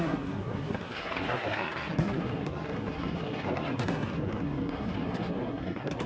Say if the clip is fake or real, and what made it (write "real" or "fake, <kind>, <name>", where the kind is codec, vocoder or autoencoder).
fake, codec, SNAC